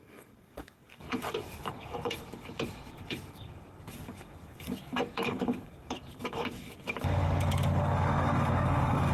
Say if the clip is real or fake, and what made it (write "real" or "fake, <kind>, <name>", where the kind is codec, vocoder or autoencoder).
fake, codec, DAC